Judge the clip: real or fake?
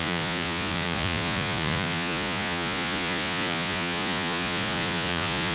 fake